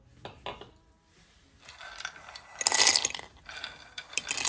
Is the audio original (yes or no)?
yes